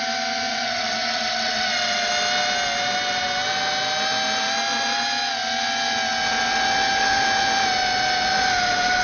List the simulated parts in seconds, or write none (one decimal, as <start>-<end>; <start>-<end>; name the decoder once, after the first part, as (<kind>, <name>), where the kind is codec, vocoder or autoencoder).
0.5-2.1 (vocoder, WaveNeXt)